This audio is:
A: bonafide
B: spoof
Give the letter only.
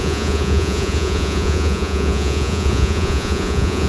B